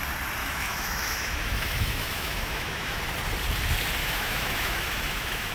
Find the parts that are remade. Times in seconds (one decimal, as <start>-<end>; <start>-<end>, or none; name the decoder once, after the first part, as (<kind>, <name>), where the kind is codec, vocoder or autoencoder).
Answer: 0.4-3.0 (autoencoder, DAC-VAE); 4.0-5.5

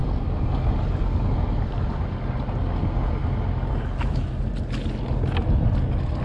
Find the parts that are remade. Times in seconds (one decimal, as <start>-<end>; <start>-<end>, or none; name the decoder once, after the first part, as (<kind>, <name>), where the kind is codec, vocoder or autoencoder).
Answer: none

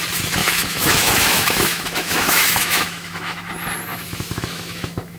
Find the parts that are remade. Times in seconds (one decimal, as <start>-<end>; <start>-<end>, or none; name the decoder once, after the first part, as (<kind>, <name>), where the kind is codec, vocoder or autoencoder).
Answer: 0.4-3.5 (autoencoder, DAC-VAE); 3.9-5.2

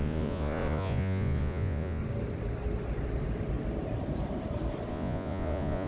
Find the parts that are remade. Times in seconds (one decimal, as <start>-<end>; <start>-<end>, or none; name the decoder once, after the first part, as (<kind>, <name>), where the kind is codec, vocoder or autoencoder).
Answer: 0.0-2.0 (vocoder, Vocos); 4.9-5.9

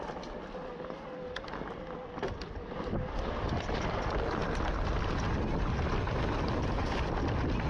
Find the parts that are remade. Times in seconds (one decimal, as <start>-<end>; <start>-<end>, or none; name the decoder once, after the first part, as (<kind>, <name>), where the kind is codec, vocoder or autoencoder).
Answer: none